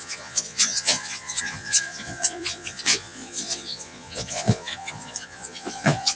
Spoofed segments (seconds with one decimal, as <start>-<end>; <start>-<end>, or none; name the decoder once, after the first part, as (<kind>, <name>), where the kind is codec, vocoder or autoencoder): 0.0-6.2 (vocoder, Vocos)